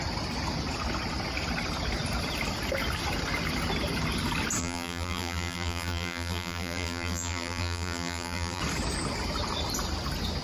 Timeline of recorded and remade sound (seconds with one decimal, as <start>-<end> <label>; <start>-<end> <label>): 0.0-4.6 recorded; 4.6-8.6 remade; 8.6-10.4 recorded